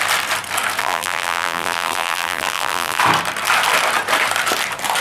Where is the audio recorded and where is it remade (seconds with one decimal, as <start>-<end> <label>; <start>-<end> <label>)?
0.0-0.8 recorded; 0.8-3.0 remade; 3.0-5.0 recorded